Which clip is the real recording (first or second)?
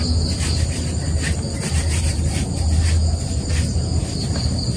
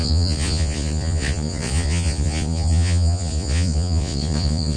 first